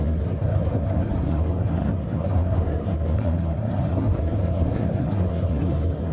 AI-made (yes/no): yes